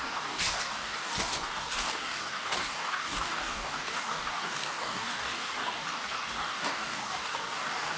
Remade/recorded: remade